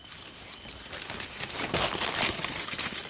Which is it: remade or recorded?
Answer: recorded